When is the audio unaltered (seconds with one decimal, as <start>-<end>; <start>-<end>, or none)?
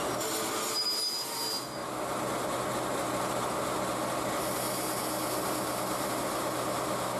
0.0-7.2